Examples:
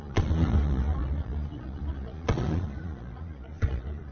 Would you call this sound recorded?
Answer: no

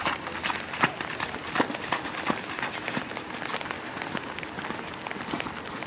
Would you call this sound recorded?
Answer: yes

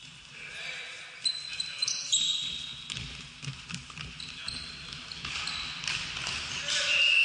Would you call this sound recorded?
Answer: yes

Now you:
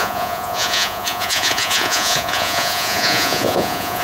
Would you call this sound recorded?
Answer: no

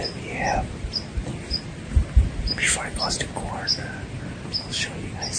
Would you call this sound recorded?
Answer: yes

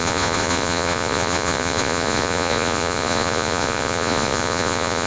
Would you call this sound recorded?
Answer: no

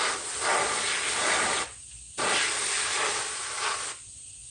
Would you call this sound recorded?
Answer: yes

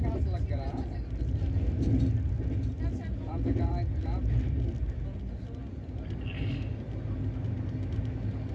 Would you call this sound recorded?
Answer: yes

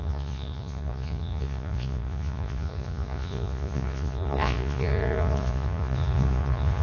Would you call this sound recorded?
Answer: no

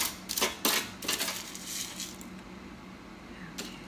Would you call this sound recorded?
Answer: yes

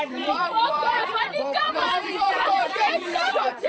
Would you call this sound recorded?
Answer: no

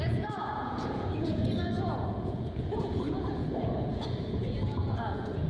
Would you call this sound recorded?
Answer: no